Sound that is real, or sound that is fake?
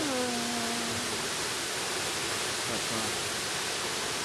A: real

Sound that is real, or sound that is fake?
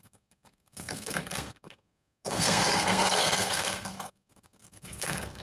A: fake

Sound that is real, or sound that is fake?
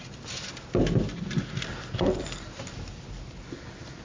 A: real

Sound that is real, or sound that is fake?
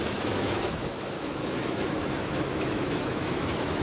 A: fake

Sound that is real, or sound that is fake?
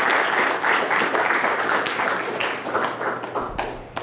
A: real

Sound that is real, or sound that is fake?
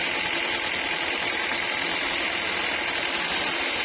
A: real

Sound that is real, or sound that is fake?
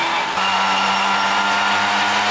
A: real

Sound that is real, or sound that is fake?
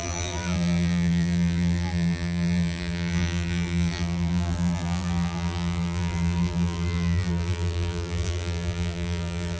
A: fake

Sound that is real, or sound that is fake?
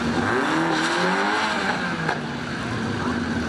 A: real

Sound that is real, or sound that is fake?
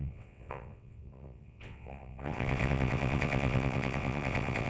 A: fake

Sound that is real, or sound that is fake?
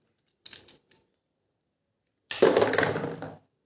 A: real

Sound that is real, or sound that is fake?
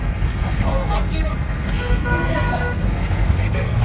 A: fake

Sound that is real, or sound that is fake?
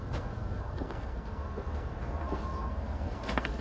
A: fake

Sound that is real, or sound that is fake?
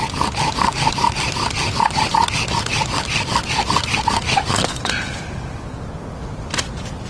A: real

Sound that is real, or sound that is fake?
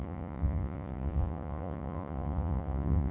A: fake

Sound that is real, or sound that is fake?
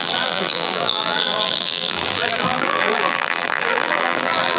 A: fake